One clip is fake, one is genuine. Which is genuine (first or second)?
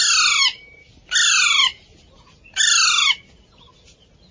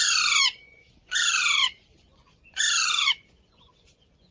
first